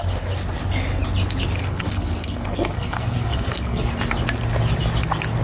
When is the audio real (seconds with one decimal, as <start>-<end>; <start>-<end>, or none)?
0.0-1.6; 3.9-5.4